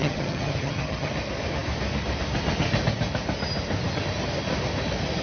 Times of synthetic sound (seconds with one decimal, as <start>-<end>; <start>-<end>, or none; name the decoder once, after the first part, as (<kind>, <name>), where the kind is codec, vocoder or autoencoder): 0.0-1.1 (vocoder, HiFi-GAN)